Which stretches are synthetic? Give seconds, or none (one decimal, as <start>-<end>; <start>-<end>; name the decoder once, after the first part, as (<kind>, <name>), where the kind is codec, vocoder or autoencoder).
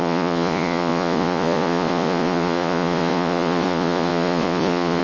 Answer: 0.0-5.0 (vocoder, Vocos)